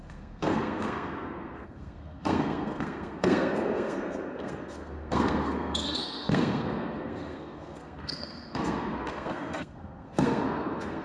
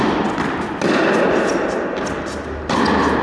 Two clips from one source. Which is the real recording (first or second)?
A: second